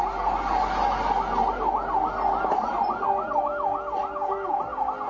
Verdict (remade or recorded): recorded